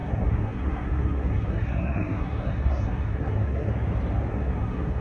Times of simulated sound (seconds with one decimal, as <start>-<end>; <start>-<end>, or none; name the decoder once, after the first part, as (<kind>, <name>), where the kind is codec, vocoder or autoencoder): 0.0-3.7 (codec, SNAC); 4.3-5.0